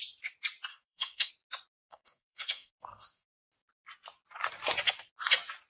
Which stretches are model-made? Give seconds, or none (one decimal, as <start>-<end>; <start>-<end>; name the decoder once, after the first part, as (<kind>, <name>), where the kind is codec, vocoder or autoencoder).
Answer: 0.7-1.3 (codec, SNAC); 1.8-3.4